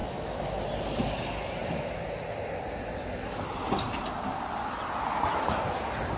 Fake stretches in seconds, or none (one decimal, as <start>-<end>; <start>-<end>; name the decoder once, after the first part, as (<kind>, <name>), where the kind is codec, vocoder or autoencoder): 0.0-0.6 (autoencoder, DAC-VAE)